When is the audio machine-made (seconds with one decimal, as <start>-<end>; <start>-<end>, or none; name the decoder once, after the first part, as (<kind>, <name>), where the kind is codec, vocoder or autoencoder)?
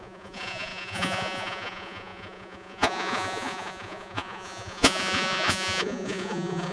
0.0-6.7 (vocoder, Vocos)